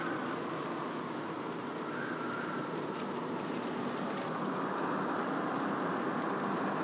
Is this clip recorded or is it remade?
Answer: recorded